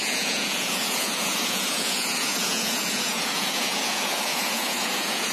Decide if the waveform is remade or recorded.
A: remade